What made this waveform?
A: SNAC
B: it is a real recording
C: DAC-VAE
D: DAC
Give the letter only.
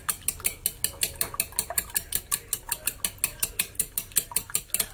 B